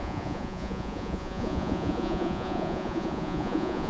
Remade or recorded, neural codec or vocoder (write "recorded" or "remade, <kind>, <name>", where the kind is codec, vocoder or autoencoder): remade, vocoder, Vocos